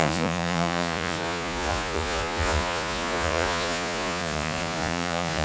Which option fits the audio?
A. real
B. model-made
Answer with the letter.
B